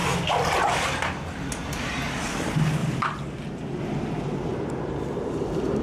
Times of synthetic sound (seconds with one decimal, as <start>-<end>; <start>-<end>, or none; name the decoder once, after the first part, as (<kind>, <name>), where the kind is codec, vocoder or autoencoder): 2.8-3.8 (vocoder, BigVGAN v2); 4.5-5.8